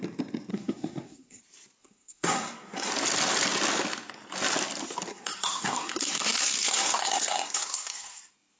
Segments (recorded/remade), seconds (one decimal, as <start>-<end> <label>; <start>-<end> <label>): 0.0-0.5 recorded; 0.5-1.4 remade; 1.4-1.8 recorded; 1.8-2.9 remade; 2.9-5.1 recorded; 5.1-8.2 remade; 8.2-8.6 recorded